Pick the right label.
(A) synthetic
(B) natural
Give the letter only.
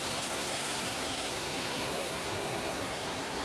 A